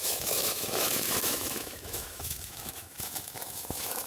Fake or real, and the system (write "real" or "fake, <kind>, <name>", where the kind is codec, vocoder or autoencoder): fake, autoencoder, DAC-VAE